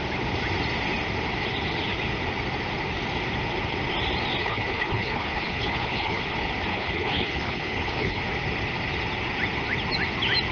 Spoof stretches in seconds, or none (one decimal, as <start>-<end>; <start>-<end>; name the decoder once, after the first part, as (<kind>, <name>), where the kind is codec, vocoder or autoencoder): 4.4-6.2 (codec, HILCodec); 6.7-8.2